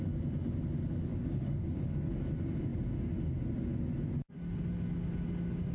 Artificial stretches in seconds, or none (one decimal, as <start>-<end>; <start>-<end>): 1.1-2.1